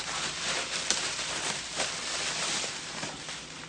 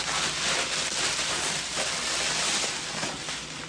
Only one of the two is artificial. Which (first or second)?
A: first